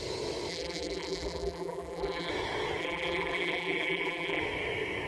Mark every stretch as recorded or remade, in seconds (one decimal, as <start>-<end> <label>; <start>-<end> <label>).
0.0-0.5 recorded; 0.5-2.3 remade; 2.3-2.8 recorded; 2.8-4.4 remade; 4.4-5.1 recorded

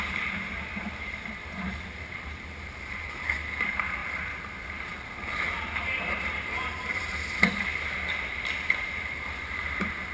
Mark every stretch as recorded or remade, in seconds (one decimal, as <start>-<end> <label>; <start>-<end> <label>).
0.0-4.0 remade; 4.0-5.7 recorded; 5.7-7.7 remade; 7.7-8.8 recorded; 8.8-10.1 remade

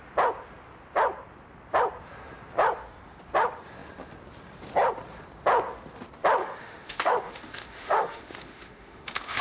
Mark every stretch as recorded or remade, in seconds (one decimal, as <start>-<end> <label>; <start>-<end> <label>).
0.0-6.4 recorded; 6.4-9.4 remade